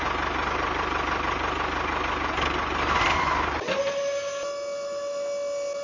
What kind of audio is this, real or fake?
real